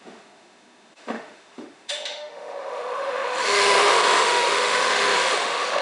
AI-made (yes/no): yes